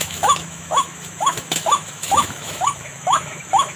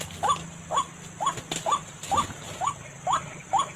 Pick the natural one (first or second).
second